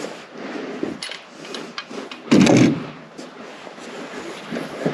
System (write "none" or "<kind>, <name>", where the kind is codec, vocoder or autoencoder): none